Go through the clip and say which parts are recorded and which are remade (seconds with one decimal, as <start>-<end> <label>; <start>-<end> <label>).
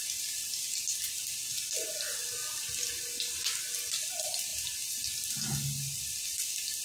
0.0-6.8 recorded